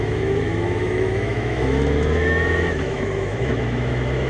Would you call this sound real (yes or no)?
no